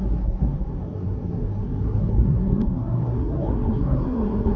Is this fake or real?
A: fake